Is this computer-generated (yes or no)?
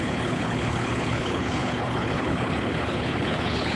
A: yes